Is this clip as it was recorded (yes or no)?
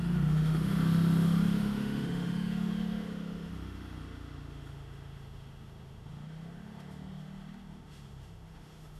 no